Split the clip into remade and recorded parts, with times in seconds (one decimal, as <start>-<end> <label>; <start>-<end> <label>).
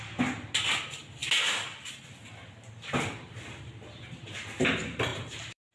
0.0-5.1 recorded; 5.1-5.7 remade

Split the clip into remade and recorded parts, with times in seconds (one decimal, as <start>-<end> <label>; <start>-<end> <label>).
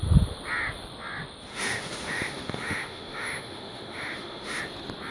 0.0-1.5 recorded; 1.5-4.6 remade; 4.6-5.1 recorded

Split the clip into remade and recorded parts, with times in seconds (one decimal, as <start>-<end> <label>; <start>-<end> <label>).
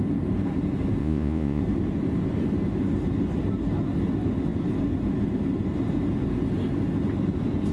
0.0-1.0 recorded; 1.0-1.6 remade; 1.6-7.7 recorded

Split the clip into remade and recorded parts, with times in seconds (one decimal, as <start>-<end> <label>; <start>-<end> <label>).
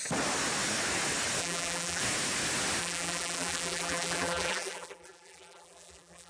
0.0-1.4 recorded; 1.4-2.0 remade; 2.0-2.8 recorded; 2.8-6.3 remade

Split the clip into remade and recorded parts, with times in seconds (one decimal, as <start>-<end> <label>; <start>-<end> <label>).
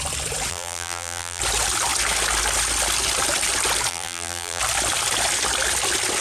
0.0-0.5 recorded; 0.5-1.4 remade; 1.4-3.9 recorded; 3.9-4.6 remade; 4.6-6.2 recorded